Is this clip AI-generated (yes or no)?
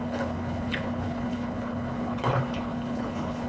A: yes